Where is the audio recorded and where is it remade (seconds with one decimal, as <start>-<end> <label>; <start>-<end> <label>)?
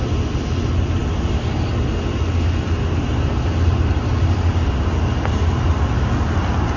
0.0-6.8 recorded